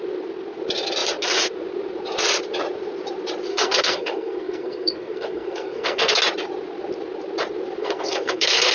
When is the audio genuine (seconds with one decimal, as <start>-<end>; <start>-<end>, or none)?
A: 0.0-3.5; 6.2-7.8

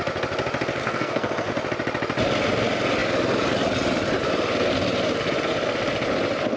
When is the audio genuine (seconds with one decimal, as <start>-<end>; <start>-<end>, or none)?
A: 0.0-0.8; 1.5-6.6

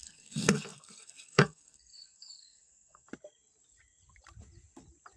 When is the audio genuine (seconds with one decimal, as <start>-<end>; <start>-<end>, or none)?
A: 3.1-5.2